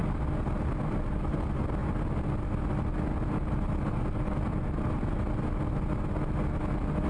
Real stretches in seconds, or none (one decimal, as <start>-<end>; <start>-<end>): 0.0-7.1